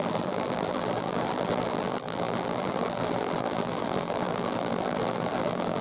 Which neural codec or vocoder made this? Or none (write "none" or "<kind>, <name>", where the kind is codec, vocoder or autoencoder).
vocoder, BigVGAN v2